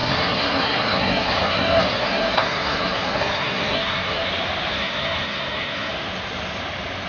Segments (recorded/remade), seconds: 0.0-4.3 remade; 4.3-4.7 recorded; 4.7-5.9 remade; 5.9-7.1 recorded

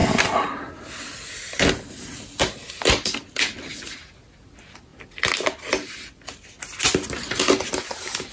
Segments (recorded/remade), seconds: 0.0-8.3 recorded

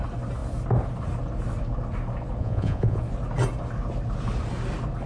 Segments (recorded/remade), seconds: 0.0-2.4 recorded; 2.4-3.0 remade; 3.0-5.1 recorded